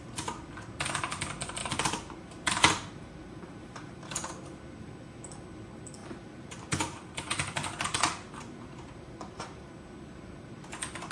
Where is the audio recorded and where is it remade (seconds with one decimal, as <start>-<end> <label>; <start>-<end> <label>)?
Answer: 0.0-1.6 recorded; 1.6-4.4 remade; 4.4-6.0 recorded; 6.0-9.7 remade; 9.7-11.1 recorded